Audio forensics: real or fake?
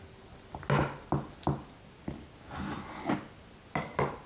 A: real